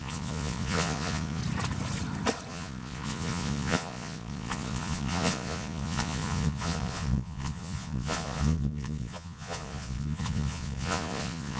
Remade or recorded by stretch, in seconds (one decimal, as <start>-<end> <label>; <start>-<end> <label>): 0.0-1.4 remade; 1.4-2.5 recorded; 2.5-11.6 remade